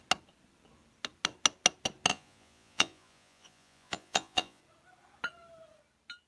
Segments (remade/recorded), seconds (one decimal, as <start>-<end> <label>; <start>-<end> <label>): 0.0-2.1 recorded; 2.1-4.6 remade; 4.6-6.3 recorded